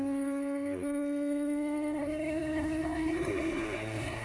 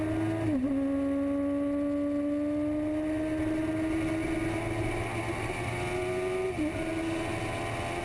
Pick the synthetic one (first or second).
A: first